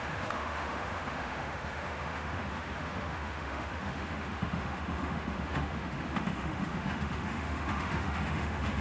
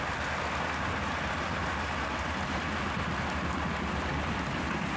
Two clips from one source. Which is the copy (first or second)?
first